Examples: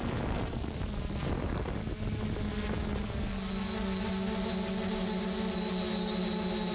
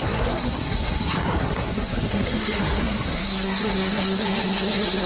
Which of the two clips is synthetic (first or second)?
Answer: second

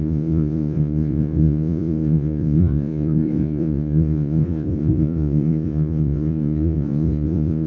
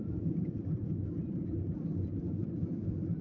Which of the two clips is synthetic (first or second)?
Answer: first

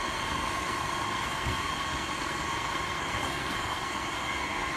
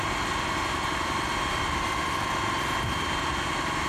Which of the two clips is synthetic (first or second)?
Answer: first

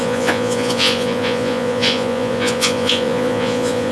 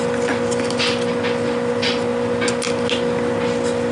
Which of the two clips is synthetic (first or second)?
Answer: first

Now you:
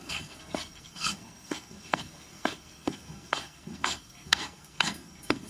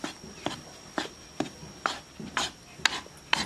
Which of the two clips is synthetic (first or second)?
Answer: first